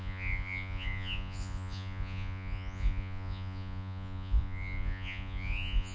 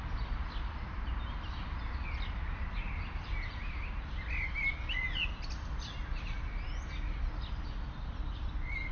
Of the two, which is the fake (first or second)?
first